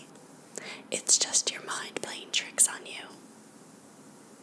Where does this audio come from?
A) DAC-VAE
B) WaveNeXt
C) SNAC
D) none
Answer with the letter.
D